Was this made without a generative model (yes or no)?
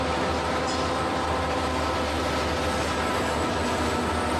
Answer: yes